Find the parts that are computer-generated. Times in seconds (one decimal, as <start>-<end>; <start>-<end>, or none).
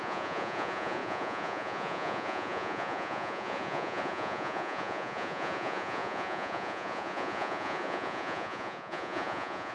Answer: 0.0-9.7